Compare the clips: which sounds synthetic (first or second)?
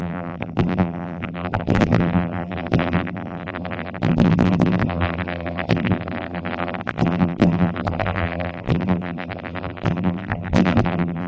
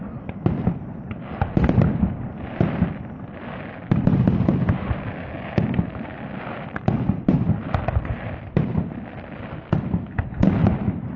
first